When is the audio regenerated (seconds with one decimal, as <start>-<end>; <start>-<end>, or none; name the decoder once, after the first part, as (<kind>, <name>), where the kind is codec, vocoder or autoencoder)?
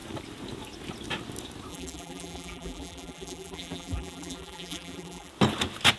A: 1.7-5.3 (vocoder, BigVGAN v2)